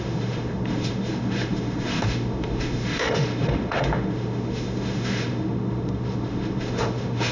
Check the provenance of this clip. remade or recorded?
remade